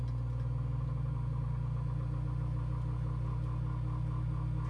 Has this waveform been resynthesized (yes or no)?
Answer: no